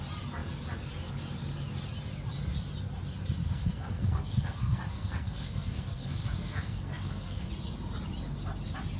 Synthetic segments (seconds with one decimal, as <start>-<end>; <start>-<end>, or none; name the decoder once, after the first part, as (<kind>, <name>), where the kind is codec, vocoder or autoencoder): 3.4-7.5 (codec, SNAC)

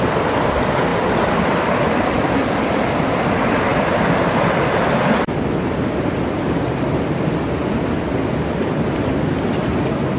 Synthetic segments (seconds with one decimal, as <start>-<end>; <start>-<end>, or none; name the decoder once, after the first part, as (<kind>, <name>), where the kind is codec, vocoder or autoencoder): none

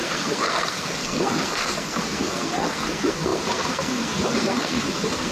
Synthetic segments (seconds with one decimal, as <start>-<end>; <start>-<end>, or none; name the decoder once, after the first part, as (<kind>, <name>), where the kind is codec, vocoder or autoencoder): 0.0-5.3 (codec, SNAC)

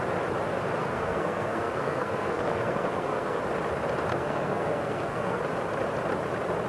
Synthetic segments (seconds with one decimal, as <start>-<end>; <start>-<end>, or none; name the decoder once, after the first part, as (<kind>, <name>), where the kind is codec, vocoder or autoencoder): 0.8-3.4 (codec, SNAC); 4.1-5.4

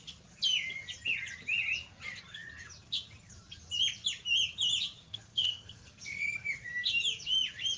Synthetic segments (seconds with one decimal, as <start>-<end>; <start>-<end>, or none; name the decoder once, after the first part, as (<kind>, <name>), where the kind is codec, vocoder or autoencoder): 5.0-6.2 (codec, SNAC)

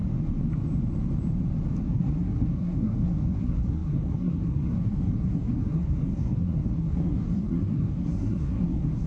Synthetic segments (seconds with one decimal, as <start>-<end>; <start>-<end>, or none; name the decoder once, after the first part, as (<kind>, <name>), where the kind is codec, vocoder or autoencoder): 1.8-9.1 (codec, SNAC)